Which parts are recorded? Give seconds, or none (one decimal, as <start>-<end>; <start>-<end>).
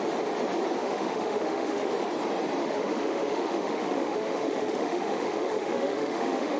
0.0-0.8; 1.9-2.6